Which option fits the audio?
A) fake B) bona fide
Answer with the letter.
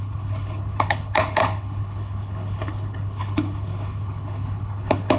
A